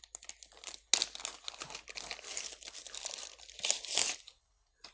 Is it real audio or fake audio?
real